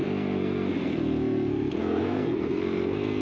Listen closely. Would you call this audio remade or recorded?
remade